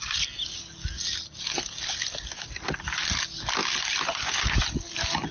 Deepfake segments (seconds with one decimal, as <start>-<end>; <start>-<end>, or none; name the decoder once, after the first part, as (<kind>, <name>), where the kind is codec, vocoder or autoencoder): none